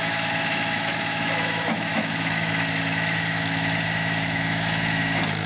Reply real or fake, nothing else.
fake